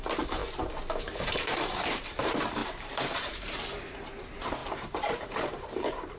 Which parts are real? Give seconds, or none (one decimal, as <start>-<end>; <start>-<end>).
0.4-1.0